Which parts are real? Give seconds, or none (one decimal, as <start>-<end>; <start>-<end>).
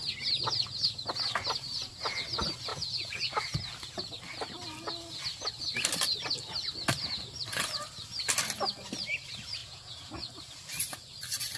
0.0-2.7; 3.3-9.6; 10.1-11.6